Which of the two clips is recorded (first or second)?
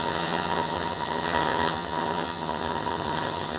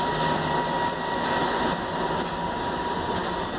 second